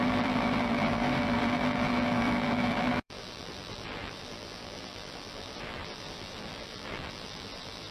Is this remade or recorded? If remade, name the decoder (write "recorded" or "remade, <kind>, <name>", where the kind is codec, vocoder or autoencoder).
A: remade, vocoder, BigVGAN v2